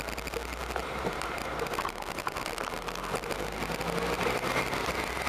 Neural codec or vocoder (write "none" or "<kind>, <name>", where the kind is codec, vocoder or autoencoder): none